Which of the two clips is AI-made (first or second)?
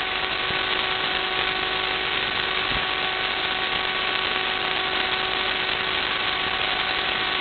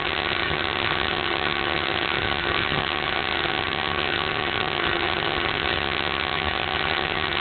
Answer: second